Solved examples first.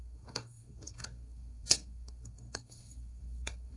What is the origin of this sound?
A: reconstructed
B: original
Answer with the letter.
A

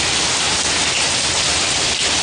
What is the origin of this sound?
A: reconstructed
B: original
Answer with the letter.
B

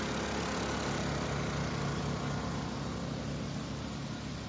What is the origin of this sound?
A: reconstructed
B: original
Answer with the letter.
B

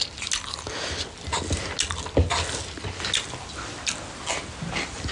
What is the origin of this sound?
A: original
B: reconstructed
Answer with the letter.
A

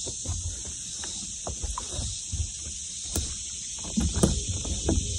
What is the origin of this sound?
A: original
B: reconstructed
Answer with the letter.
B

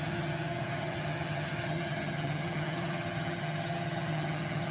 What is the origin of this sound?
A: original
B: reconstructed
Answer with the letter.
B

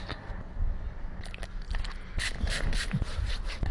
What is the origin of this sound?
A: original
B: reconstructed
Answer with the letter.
A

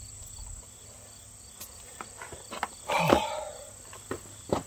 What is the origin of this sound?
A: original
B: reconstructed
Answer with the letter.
A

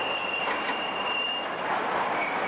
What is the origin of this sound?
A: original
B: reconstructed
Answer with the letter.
A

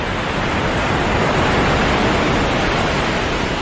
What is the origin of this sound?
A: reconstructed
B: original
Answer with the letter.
B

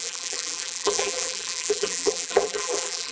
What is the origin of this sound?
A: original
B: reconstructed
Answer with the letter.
B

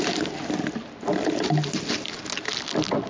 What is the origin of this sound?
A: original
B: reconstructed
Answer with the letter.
A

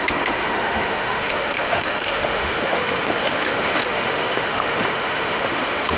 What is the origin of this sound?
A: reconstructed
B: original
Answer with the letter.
A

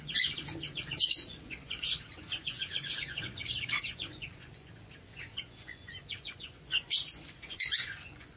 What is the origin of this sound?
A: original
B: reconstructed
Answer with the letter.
B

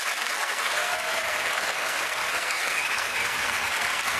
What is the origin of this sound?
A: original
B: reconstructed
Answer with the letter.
B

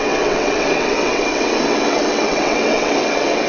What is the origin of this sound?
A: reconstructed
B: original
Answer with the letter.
A